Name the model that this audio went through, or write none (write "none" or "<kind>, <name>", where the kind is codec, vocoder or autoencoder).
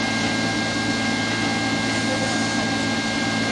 none